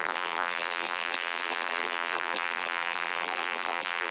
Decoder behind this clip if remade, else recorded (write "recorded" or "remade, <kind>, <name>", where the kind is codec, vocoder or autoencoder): remade, vocoder, BigVGAN v2